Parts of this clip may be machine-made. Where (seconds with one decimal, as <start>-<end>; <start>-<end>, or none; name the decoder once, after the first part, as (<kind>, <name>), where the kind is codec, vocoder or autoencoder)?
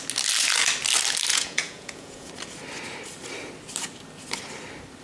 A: 1.3-2.3 (vocoder, Vocos)